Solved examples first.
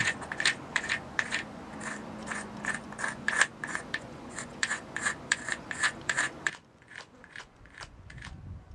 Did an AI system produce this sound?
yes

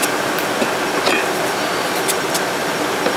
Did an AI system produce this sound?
no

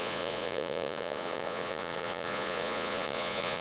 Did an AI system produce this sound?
yes